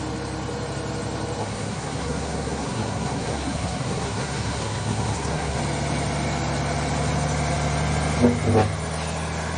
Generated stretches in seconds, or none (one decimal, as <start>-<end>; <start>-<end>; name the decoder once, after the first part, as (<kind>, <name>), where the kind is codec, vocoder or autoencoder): 1.4-5.6 (codec, SNAC)